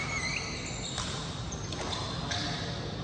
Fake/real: real